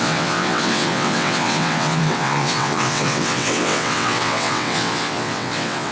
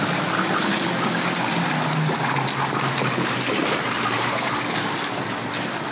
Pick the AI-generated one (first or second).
first